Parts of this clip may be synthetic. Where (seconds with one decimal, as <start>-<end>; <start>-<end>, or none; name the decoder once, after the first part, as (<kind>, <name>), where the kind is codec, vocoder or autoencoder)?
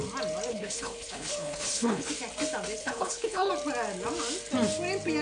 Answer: 0.5-2.1 (codec, HILCodec); 2.8-3.5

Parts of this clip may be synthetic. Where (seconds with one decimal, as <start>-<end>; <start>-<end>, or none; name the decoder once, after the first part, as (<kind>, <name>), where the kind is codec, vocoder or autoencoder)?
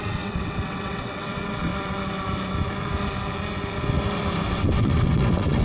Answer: 0.0-1.7 (vocoder, WaveNeXt); 4.5-5.6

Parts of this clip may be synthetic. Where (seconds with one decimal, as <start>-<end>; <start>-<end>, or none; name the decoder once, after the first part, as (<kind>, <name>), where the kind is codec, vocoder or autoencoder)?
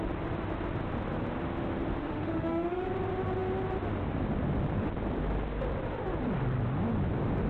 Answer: 2.0-2.9 (autoencoder, DAC-VAE)